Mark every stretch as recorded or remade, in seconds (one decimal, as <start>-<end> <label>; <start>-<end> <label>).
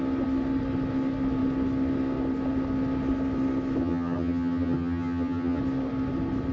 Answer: 0.0-3.8 recorded; 3.8-5.6 remade; 5.6-6.5 recorded